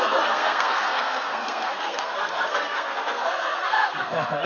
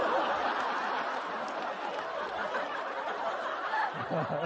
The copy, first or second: first